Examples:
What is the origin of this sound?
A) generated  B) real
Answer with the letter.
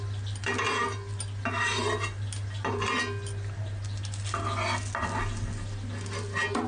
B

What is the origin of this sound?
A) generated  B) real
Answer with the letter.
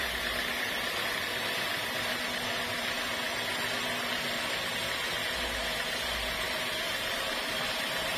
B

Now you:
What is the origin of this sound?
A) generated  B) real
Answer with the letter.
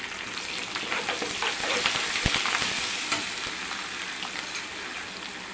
B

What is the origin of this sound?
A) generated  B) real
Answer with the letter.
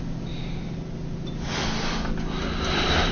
B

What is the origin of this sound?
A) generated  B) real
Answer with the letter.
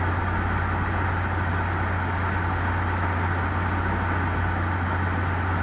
B